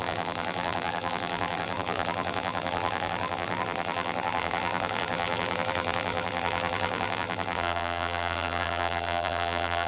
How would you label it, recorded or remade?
remade